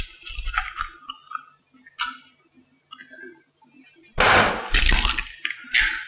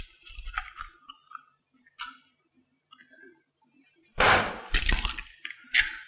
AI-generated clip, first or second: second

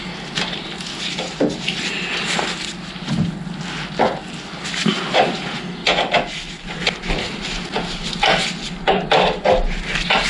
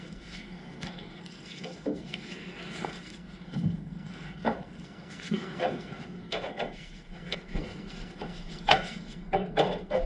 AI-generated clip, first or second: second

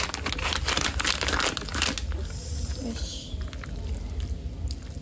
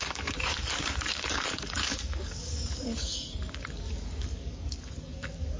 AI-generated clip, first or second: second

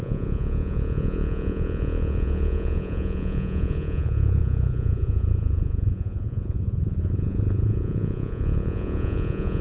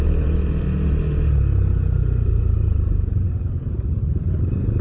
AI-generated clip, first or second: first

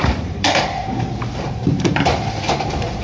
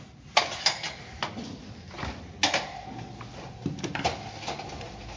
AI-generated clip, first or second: first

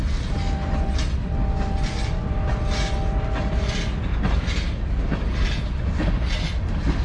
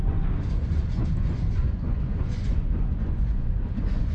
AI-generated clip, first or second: second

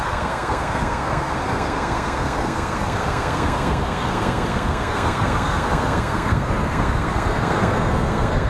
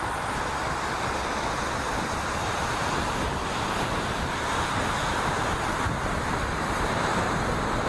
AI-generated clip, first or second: first